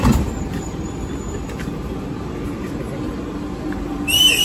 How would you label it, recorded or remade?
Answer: remade